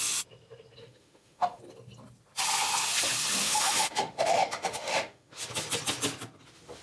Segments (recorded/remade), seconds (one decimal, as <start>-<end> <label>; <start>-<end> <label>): 0.0-0.8 recorded; 0.8-1.6 remade; 1.6-3.4 recorded; 3.4-5.4 remade; 5.4-6.8 recorded

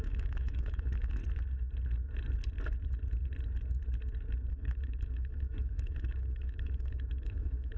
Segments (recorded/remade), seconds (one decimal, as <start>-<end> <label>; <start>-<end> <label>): 0.0-1.2 remade; 1.2-4.5 recorded; 4.5-7.8 remade

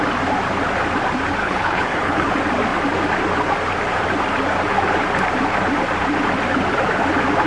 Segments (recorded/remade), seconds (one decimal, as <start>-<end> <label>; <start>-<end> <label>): 0.0-1.4 recorded; 1.4-2.3 remade; 2.3-7.5 recorded

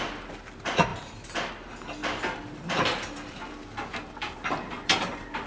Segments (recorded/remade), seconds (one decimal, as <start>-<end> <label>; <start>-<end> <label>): 0.0-0.9 recorded; 0.9-1.5 remade; 1.5-2.0 recorded; 2.0-3.4 remade; 3.4-4.2 recorded; 4.2-5.1 remade; 5.1-5.5 recorded